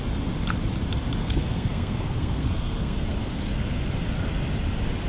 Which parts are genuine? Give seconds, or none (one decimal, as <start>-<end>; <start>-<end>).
0.0-1.2; 3.4-5.1